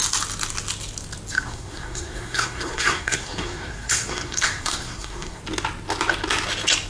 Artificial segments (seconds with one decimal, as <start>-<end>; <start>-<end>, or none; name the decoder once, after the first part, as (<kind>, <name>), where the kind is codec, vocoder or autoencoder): 1.3-5.4 (codec, SNAC)